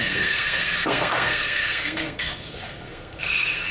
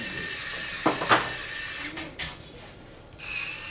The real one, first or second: second